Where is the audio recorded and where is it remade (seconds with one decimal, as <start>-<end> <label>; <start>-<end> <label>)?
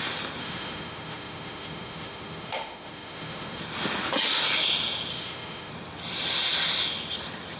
0.0-0.4 recorded; 0.4-3.6 remade; 3.6-5.1 recorded; 5.1-5.7 remade; 5.7-7.6 recorded